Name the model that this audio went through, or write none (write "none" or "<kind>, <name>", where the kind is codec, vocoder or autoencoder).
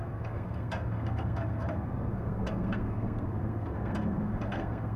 codec, SNAC